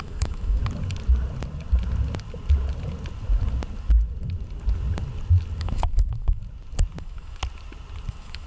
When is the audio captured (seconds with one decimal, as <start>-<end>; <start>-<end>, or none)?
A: 0.6-5.6; 6.4-7.0; 7.4-8.1